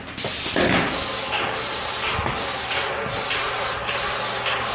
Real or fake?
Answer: real